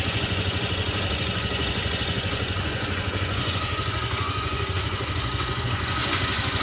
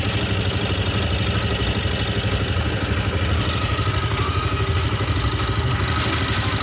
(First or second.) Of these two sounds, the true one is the second